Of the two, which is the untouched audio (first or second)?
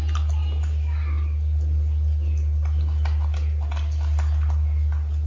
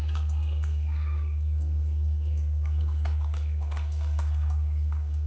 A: first